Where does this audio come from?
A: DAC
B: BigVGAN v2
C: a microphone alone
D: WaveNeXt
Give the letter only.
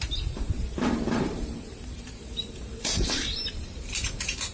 B